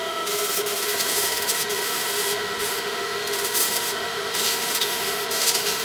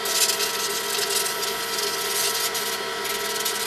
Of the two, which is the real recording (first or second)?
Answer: second